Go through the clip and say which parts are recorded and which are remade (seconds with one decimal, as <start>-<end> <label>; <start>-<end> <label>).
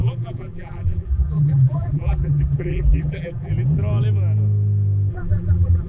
0.0-3.5 remade; 3.5-5.1 recorded; 5.1-5.9 remade